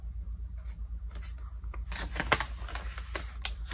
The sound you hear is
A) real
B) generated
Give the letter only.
A